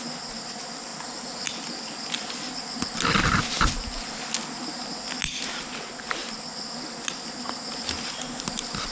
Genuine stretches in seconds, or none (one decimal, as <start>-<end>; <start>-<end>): 0.0-8.9